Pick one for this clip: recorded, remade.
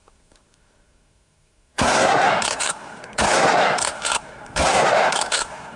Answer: remade